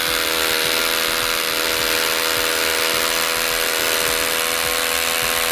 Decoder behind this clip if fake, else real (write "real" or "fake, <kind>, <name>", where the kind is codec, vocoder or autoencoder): real